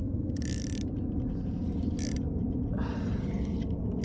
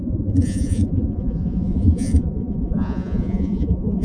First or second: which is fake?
second